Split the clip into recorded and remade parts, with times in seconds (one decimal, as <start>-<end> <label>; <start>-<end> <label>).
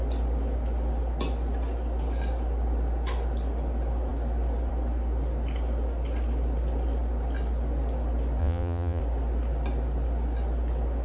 0.0-8.4 recorded; 8.4-9.0 remade; 9.0-11.0 recorded